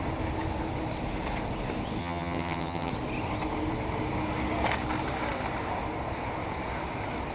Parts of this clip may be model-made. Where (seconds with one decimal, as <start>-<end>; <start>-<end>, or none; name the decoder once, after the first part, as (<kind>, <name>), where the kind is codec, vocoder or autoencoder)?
2.0-2.9 (vocoder, HiFi-GAN)